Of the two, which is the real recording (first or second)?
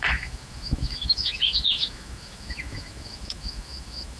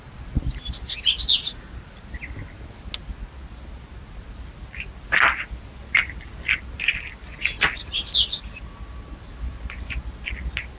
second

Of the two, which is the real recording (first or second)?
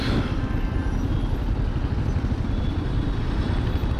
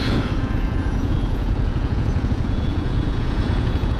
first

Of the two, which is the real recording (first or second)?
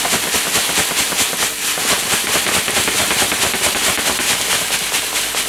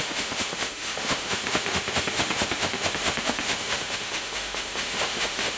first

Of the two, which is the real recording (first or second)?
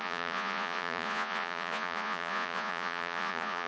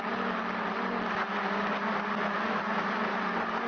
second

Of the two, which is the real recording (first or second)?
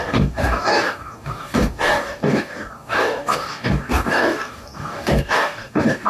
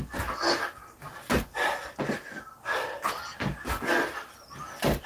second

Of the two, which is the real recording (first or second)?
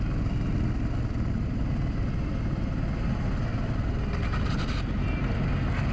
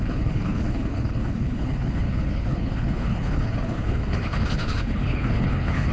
first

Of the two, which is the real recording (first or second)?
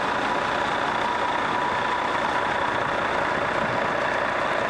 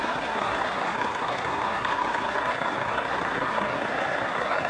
first